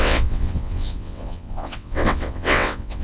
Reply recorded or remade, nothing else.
remade